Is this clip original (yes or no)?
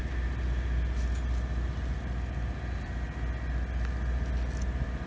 yes